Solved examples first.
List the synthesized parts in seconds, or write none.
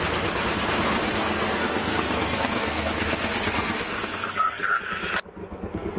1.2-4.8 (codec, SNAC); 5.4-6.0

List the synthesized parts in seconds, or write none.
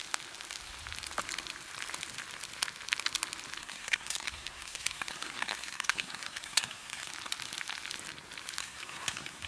3.6-7.1 (codec, SNAC); 8.6-9.5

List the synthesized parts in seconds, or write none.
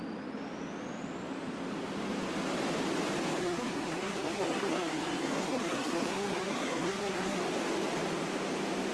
3.4-7.4 (codec, SNAC)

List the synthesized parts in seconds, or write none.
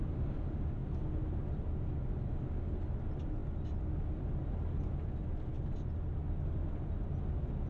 none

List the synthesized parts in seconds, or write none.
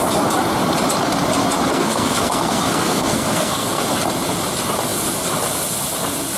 1.7-3.8 (codec, SNAC)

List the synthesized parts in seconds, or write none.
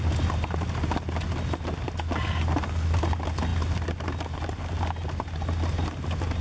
none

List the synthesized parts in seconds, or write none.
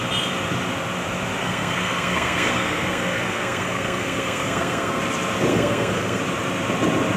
1.4-5.0 (codec, SNAC); 5.5-6.2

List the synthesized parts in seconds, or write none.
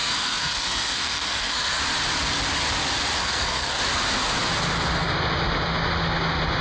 0.0-1.8 (codec, SNAC); 3.2-3.8